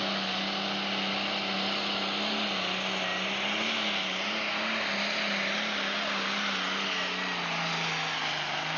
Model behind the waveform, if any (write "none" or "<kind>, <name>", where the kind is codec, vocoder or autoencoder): none